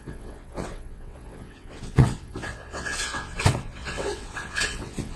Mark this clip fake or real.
fake